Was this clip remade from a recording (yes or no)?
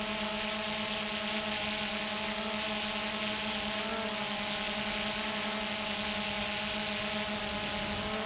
no